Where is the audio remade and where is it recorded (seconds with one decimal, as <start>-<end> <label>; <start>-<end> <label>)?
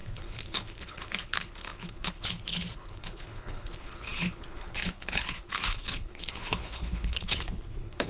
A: 0.0-8.1 remade